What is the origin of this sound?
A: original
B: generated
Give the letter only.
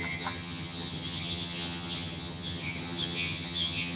B